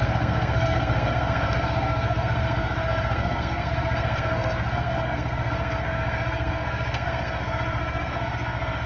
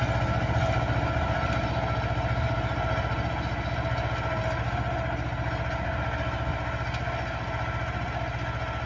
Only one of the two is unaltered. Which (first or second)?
second